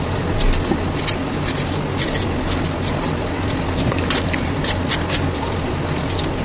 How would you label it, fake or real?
real